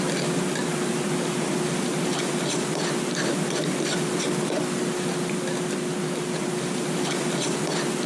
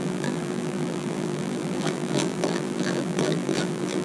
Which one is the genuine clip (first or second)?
first